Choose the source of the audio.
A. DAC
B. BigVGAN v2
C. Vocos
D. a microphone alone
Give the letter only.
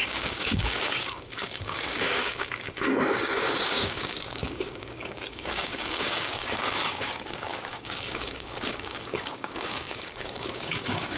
A